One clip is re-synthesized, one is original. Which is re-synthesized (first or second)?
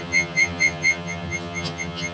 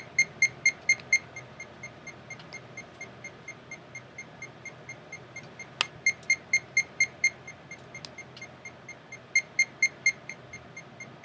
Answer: first